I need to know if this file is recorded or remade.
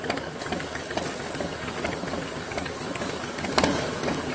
remade